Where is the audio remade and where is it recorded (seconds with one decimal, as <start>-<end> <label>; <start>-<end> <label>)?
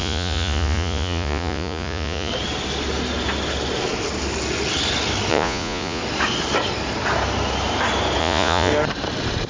0.0-2.3 remade; 2.3-5.3 recorded; 5.3-6.0 remade; 6.0-8.2 recorded; 8.2-8.7 remade; 8.7-9.5 recorded